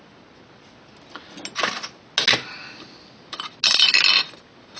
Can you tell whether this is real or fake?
real